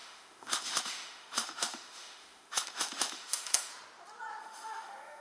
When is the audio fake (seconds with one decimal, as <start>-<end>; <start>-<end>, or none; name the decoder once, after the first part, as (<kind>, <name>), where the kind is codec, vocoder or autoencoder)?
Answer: 0.0-3.7 (autoencoder, DAC-VAE); 4.4-5.2